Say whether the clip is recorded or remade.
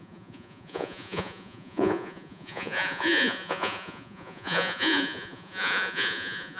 remade